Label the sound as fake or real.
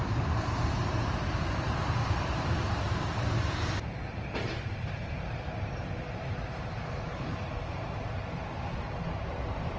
fake